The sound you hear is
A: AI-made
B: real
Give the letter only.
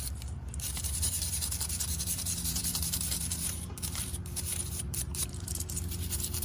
A